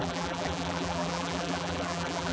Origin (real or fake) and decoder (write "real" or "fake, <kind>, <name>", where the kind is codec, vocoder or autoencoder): fake, vocoder, BigVGAN v2